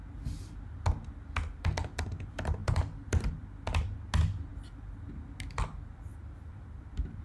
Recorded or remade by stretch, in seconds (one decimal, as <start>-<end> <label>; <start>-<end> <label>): 0.0-2.6 recorded; 2.6-3.3 remade; 3.3-6.1 recorded; 6.1-7.2 remade